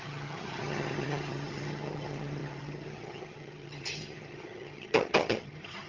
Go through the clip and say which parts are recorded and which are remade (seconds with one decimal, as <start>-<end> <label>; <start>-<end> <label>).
0.0-5.9 remade